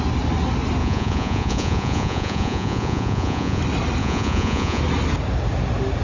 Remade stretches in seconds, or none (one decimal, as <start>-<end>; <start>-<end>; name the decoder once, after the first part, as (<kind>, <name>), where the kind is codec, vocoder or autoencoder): 0.8-3.6 (vocoder, Vocos); 4.0-4.8